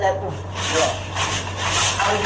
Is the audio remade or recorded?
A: recorded